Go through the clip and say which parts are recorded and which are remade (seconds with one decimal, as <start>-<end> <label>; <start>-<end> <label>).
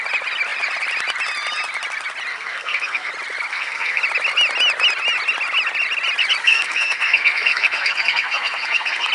0.0-2.3 recorded; 2.3-3.1 remade; 3.1-3.5 recorded; 3.5-4.0 remade; 4.0-6.4 recorded; 6.4-9.1 remade